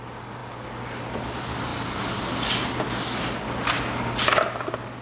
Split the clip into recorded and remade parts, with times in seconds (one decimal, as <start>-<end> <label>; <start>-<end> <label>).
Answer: 0.0-5.0 recorded